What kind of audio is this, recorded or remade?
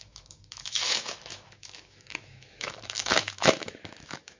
remade